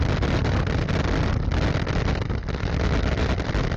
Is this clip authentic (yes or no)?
yes